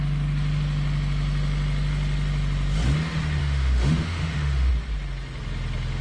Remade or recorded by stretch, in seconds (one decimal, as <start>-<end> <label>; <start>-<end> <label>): 0.0-3.4 recorded; 3.4-4.7 remade; 4.7-6.0 recorded